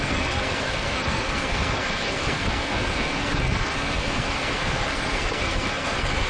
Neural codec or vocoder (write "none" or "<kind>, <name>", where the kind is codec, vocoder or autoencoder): codec, SNAC